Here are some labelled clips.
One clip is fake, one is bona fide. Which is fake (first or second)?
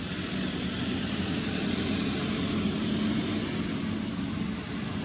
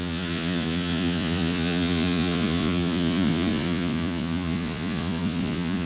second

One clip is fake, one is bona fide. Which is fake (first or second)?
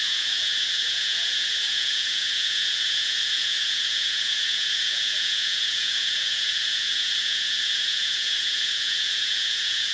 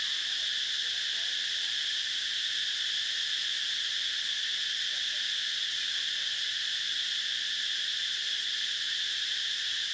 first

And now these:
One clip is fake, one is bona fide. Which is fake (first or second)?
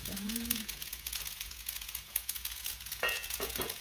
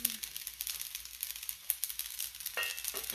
first